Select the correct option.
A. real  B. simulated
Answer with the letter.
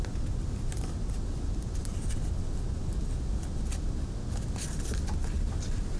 A